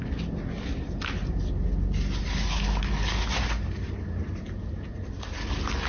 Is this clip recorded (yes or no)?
yes